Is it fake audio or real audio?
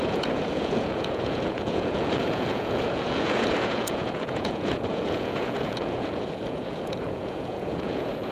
fake